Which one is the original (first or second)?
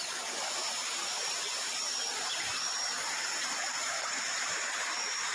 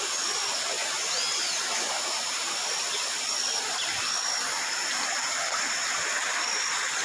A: second